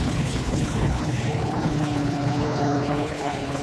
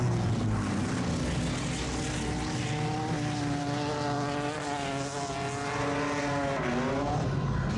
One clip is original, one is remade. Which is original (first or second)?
second